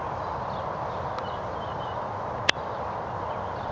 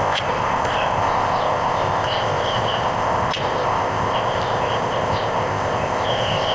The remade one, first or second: second